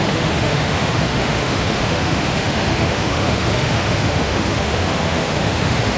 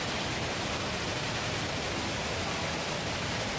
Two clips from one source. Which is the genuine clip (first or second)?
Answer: second